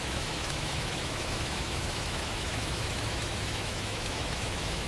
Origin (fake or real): fake